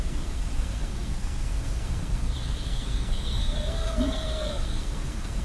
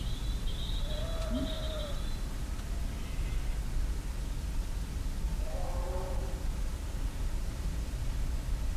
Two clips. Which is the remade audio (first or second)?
first